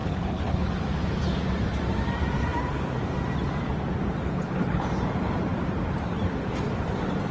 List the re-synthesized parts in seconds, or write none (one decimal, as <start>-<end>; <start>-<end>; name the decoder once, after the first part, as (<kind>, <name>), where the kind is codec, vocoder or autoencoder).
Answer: 0.0-0.7 (codec, HILCodec); 4.2-4.9